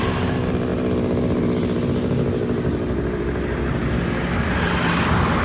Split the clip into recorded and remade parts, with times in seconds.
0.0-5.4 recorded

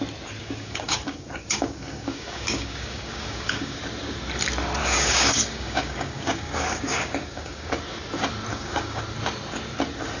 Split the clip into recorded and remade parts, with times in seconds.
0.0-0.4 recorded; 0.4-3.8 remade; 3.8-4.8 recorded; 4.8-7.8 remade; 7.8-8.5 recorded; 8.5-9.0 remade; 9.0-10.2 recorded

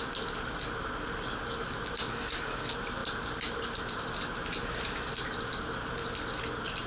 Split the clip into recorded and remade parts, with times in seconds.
0.0-6.9 recorded

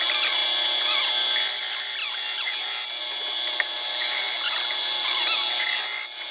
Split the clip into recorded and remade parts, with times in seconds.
0.0-6.3 recorded